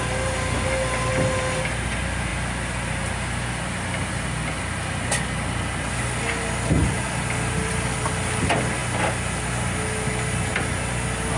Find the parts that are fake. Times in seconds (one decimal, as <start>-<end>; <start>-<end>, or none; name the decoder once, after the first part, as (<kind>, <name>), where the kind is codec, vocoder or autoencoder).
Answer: 6.8-8.4 (vocoder, BigVGAN v2)